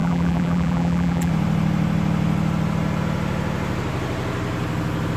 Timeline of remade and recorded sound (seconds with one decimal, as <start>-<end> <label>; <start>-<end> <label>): 0.0-1.3 remade; 1.3-5.2 recorded